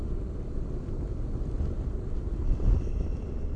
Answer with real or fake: real